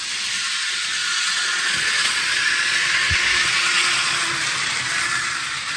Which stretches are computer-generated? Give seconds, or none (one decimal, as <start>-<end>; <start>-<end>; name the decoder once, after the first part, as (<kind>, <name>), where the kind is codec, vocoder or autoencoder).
1.0-4.1 (vocoder, Vocos)

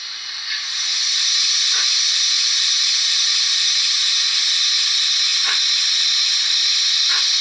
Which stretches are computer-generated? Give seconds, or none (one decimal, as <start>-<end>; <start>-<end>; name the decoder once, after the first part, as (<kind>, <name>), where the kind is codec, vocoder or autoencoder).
none

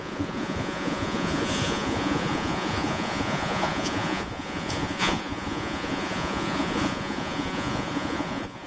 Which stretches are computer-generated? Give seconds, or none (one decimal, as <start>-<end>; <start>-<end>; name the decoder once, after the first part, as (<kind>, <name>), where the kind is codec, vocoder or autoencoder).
0.0-8.7 (vocoder, Vocos)

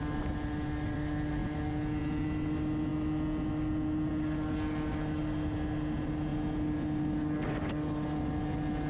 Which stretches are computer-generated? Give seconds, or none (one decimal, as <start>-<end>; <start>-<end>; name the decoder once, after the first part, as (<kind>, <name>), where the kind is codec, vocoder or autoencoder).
none

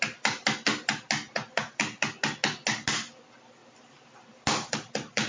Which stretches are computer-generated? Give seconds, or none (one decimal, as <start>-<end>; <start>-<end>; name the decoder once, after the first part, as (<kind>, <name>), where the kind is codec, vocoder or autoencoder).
3.6-5.3 (vocoder, BigVGAN v2)